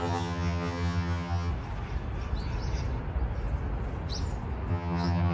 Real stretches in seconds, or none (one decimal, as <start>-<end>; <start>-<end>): 1.5-4.7